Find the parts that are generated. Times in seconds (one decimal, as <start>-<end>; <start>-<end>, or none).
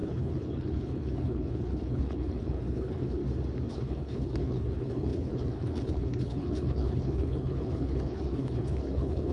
0.0-3.2; 3.7-9.3